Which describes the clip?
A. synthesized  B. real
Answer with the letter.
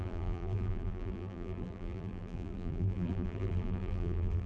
A